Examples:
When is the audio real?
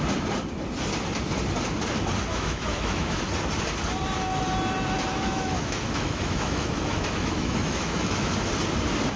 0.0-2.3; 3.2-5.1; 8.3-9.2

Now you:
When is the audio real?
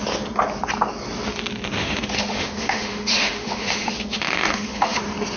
0.0-1.8; 5.0-5.4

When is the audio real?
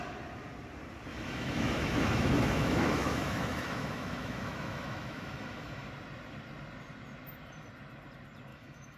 0.0-1.1; 5.9-8.5